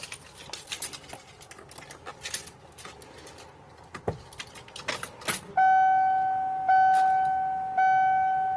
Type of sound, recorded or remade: recorded